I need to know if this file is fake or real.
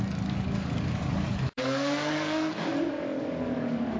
fake